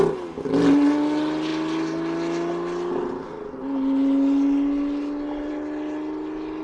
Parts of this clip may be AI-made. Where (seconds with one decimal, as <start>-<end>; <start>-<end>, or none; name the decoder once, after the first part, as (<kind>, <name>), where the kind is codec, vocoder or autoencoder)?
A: none